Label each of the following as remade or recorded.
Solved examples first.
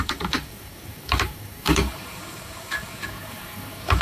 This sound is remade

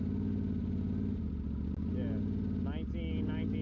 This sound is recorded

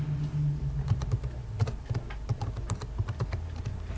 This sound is recorded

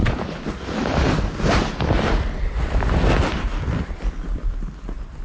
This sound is recorded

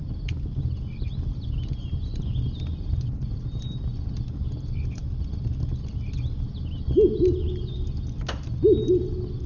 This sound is recorded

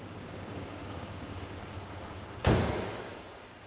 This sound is remade